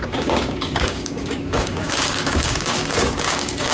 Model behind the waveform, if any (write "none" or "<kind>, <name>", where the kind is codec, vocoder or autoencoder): codec, DAC